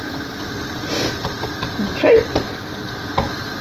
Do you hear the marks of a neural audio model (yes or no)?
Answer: no